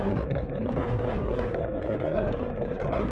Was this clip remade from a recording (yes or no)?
yes